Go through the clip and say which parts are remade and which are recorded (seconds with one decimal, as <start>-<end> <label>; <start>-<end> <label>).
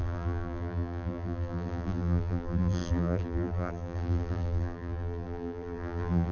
0.0-6.3 remade